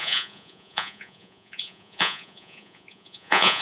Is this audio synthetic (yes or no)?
yes